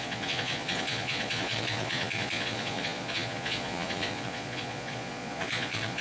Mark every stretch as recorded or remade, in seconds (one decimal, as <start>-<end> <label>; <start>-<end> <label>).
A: 0.0-6.0 remade